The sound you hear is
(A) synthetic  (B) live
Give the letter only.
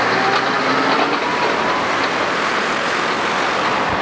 B